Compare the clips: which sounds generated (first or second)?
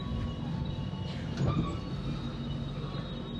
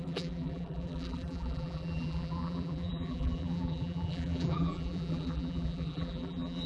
second